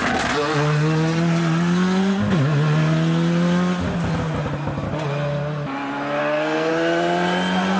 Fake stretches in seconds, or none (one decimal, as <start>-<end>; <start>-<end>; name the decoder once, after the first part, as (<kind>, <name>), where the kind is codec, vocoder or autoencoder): 6.2-6.7 (codec, SNAC)